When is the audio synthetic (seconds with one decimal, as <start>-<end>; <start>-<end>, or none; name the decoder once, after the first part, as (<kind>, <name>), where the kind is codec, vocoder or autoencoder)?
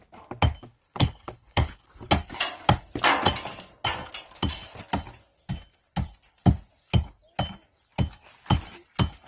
0.6-1.9 (codec, HILCodec)